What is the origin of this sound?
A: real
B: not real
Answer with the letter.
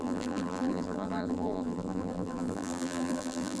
B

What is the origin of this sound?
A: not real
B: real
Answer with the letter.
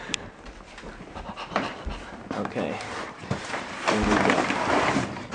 A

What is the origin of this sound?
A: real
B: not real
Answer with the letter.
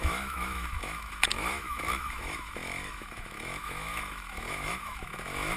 B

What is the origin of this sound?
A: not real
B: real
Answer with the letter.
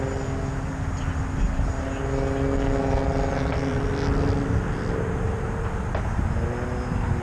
B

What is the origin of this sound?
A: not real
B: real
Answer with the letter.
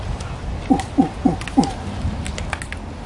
B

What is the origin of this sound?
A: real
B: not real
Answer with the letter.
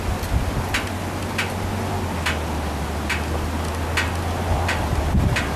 A